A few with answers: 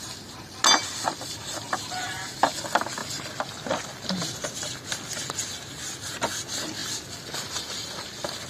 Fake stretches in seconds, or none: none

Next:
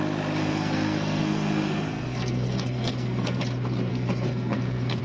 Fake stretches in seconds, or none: 0.4-3.4 (codec, SNAC); 3.9-5.0